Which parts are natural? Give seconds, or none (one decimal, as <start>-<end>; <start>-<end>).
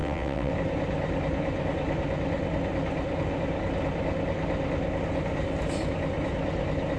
0.5-7.0